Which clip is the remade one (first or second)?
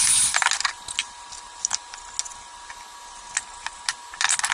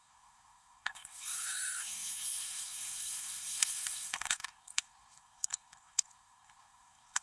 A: second